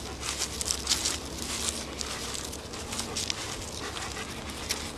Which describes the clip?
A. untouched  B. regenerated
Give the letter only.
A